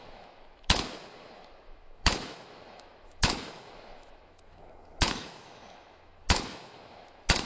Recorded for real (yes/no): no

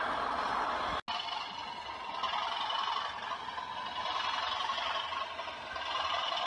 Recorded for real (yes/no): yes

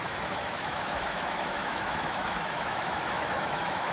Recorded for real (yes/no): no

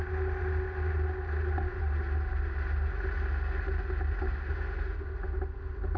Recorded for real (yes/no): yes